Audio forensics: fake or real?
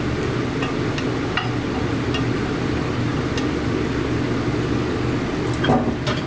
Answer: real